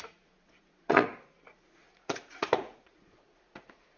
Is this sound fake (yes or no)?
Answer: yes